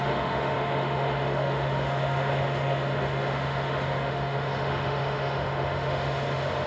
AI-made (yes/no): yes